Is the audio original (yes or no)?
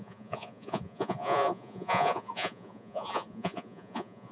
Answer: no